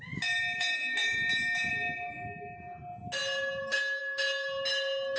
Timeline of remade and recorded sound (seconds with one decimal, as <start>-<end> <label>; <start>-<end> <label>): 0.0-5.2 recorded